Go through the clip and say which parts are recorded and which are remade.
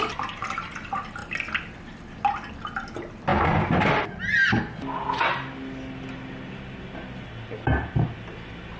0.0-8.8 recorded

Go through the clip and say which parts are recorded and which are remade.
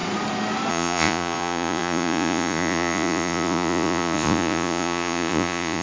0.0-0.7 recorded; 0.7-5.8 remade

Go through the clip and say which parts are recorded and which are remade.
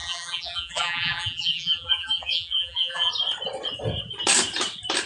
0.0-3.1 remade; 3.1-5.1 recorded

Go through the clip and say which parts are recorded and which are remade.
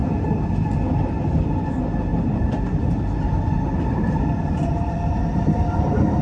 0.0-2.1 recorded; 2.1-5.8 remade; 5.8-6.2 recorded